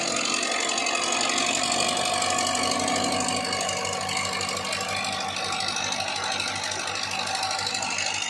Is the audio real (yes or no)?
yes